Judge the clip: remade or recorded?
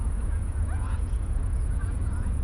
remade